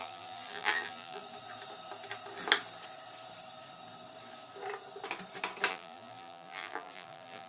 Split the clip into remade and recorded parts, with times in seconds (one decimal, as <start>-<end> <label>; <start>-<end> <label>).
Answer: 0.0-1.2 remade; 1.2-5.7 recorded; 5.7-7.5 remade